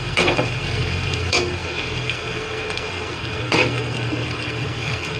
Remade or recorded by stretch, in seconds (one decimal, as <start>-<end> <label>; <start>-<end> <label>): 0.0-5.2 remade